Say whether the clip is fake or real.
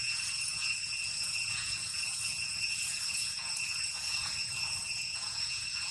fake